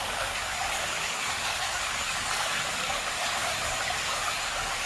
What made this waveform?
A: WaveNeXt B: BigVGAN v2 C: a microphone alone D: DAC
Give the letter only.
D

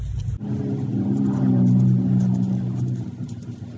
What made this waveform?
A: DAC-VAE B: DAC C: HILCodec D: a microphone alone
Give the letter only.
D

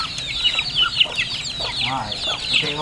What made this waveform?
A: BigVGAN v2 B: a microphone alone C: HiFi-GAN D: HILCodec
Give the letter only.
B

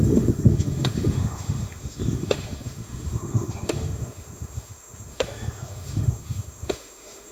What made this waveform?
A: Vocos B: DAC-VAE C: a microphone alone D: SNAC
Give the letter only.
B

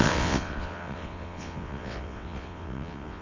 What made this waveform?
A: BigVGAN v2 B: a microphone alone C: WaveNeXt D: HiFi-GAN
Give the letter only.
C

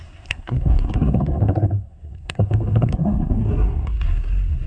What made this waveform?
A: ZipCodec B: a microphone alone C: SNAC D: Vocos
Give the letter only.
C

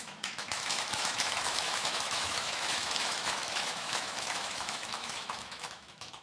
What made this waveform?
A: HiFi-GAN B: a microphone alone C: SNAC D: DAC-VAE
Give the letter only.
D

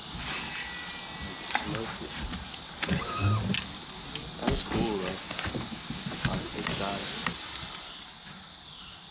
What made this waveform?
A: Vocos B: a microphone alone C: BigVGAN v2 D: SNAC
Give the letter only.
B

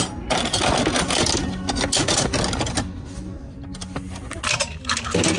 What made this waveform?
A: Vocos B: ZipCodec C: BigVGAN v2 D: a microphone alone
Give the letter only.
D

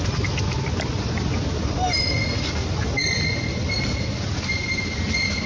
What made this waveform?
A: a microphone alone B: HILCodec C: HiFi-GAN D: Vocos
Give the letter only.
A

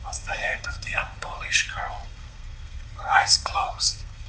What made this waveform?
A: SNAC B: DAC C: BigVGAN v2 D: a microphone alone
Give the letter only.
A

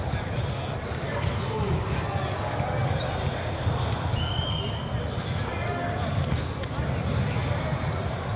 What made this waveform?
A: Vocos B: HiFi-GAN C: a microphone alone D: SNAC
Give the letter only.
C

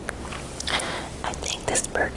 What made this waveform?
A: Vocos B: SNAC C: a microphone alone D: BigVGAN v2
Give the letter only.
C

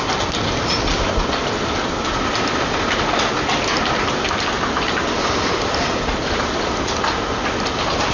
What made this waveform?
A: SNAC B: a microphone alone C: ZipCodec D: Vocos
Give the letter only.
B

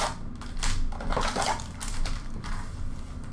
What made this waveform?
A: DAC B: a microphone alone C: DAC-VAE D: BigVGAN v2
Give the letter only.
B